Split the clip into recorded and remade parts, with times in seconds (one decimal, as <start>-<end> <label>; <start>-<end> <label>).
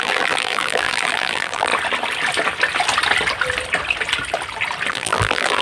0.0-1.7 remade; 1.7-4.9 recorded; 4.9-5.6 remade